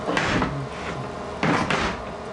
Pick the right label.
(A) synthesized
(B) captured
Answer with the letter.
B